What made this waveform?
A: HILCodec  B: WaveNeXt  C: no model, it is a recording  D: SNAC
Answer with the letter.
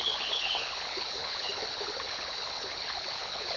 A